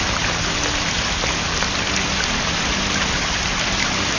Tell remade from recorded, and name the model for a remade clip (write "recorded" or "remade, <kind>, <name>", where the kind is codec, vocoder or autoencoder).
recorded